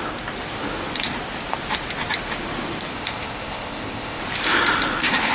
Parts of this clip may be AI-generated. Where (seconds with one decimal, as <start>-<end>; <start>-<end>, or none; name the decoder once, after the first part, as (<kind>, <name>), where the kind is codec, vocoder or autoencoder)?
2.9-4.2 (codec, ZipCodec)